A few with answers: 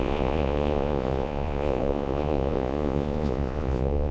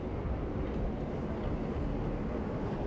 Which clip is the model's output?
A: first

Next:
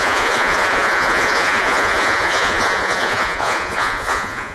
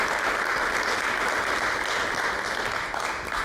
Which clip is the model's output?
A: first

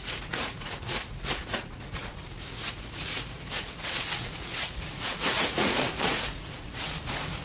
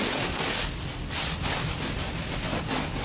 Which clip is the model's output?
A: first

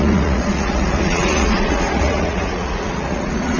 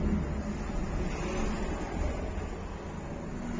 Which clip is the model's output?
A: first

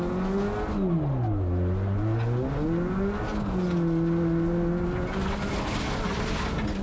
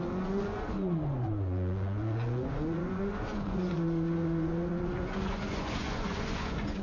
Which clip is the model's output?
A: second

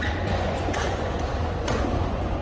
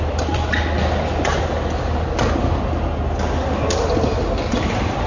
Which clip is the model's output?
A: first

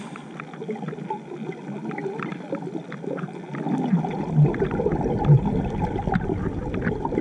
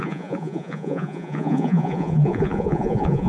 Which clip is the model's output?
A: second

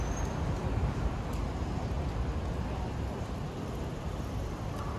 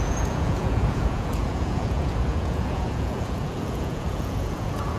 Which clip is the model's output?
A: second